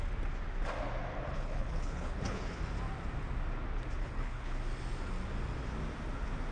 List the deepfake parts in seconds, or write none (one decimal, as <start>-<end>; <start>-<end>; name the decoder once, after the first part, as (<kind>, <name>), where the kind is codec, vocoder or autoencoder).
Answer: 1.3-2.6 (codec, HILCodec); 4.0-4.6

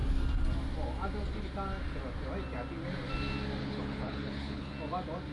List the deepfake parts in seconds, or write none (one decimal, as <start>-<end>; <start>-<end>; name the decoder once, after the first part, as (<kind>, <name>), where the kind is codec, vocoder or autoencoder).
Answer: 3.6-4.7 (codec, HILCodec)

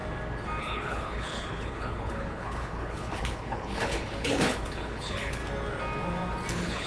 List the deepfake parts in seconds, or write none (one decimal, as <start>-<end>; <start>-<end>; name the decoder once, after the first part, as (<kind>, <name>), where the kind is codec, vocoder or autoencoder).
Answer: 0.6-5.4 (codec, HILCodec); 6.5-6.9

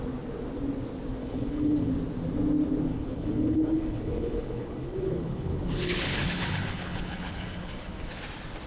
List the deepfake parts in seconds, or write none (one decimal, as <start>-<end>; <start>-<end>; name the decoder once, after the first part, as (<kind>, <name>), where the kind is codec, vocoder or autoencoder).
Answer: 1.2-1.9 (codec, HILCodec); 2.9-8.1